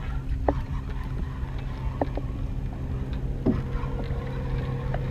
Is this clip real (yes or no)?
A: yes